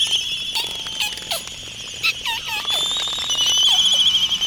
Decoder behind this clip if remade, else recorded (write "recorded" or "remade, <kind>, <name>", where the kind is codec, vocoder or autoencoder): recorded